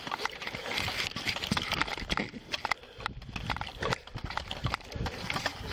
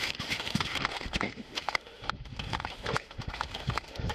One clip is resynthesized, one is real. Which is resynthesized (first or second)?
second